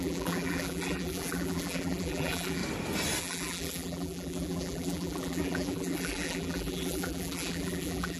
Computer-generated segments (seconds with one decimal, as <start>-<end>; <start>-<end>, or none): 0.0-2.6; 3.2-8.2